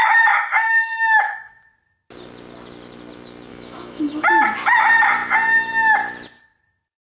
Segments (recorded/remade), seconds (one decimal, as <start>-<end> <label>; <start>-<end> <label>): 0.0-1.6 remade; 1.6-3.5 recorded; 3.5-4.3 remade; 4.3-7.1 recorded